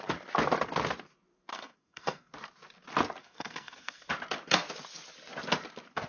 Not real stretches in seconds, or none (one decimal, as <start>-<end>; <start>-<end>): 1.5-2.3; 3.2-4.1